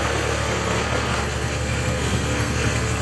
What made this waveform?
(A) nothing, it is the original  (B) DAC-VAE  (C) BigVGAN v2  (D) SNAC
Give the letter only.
D